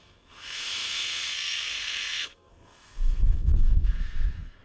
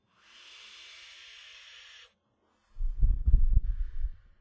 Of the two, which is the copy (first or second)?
first